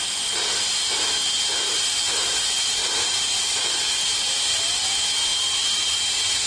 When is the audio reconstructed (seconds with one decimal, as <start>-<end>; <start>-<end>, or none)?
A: none